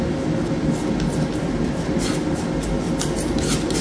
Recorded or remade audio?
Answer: recorded